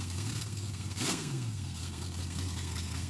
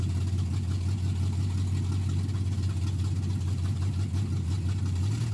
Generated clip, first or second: first